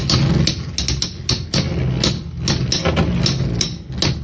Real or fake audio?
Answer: real